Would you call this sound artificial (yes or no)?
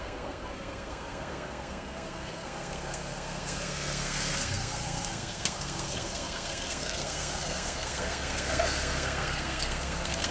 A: yes